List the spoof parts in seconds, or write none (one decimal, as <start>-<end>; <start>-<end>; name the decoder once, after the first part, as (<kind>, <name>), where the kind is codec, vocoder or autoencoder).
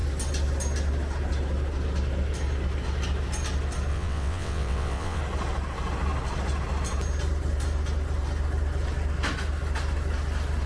3.9-5.2 (vocoder, WaveNeXt)